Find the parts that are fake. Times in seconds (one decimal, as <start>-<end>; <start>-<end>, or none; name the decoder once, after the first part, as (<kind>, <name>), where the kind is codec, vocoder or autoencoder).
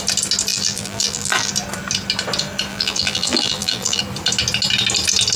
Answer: 0.5-1.5 (vocoder, BigVGAN v2); 2.7-4.0